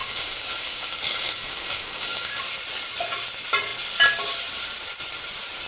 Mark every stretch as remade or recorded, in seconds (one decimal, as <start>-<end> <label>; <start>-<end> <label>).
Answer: 0.0-2.4 remade; 2.4-5.7 recorded